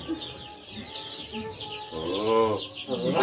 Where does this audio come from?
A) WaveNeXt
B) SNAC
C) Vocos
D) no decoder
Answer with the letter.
D